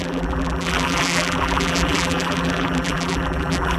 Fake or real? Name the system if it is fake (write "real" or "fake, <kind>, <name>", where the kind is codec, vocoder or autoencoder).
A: fake, vocoder, BigVGAN v2